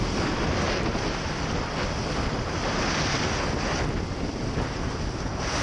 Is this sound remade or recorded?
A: recorded